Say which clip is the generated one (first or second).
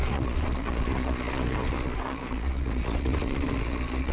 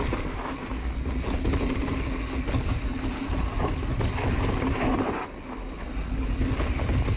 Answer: first